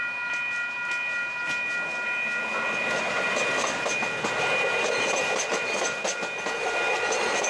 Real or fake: real